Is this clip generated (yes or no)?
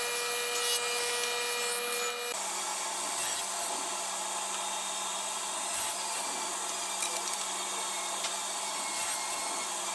no